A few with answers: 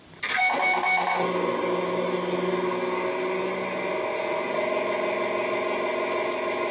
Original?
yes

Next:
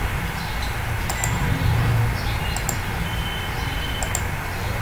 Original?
yes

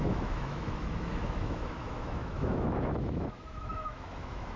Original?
no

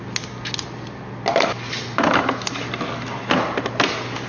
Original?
yes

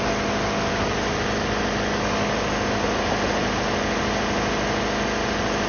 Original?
yes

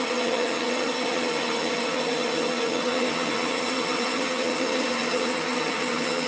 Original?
no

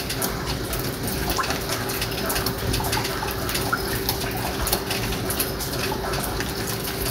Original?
yes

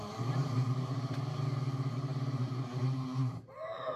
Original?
no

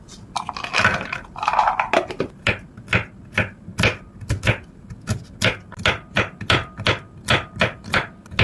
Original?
yes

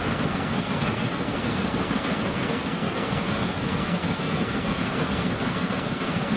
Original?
no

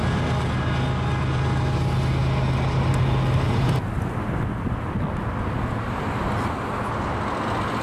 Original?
yes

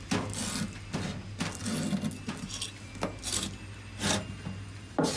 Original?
yes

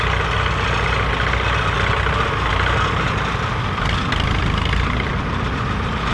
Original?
yes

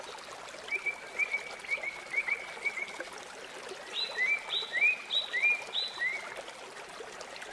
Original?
yes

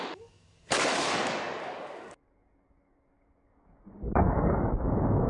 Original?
no